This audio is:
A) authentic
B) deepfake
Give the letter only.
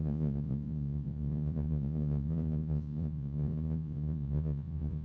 B